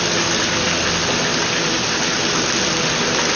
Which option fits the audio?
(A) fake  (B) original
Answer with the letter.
B